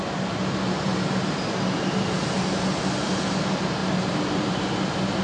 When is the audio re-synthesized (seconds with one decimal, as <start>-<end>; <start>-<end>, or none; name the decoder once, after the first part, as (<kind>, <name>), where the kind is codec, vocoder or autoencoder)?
3.8-4.7 (vocoder, BigVGAN v2)